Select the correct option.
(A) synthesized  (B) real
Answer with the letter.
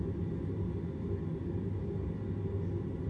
B